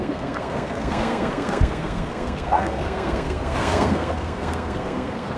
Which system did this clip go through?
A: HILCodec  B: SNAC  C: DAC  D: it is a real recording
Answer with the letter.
B